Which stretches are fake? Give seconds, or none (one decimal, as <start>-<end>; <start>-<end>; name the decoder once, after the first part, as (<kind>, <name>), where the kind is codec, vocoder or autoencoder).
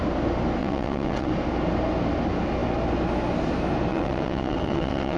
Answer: 0.6-1.3 (vocoder, WaveNeXt); 3.9-5.2